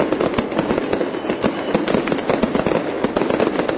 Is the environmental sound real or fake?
real